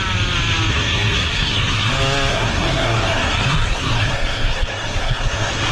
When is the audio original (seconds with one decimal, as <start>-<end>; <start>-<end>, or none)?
0.0-0.7; 1.9-2.3

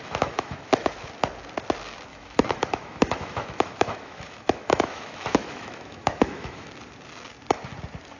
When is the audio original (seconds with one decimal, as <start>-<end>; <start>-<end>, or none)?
0.9-2.1; 6.7-8.2

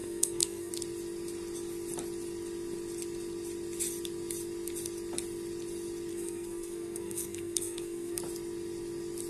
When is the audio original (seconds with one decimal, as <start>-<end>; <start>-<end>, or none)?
0.7-6.1; 8.2-9.3

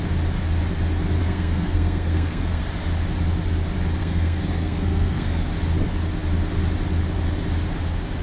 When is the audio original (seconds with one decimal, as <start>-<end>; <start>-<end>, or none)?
0.0-1.2; 2.6-4.0; 5.5-8.2